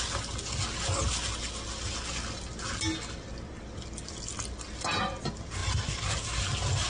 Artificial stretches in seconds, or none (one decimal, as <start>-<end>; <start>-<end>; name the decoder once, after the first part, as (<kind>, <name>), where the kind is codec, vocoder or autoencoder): none